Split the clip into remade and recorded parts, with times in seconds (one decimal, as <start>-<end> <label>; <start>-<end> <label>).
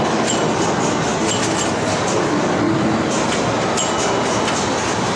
0.0-5.2 recorded